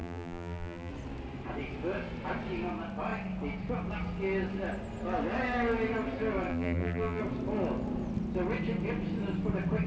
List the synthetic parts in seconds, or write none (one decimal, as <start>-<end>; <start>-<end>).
0.0-0.9; 6.5-7.2